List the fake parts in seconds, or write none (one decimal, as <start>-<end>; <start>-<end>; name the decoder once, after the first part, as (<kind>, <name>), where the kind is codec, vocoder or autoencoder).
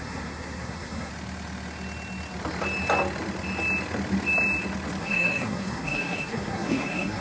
0.0-1.1 (codec, SNAC); 5.0-7.2